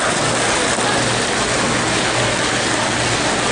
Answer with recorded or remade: recorded